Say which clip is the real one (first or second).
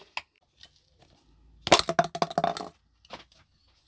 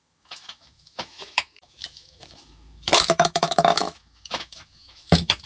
first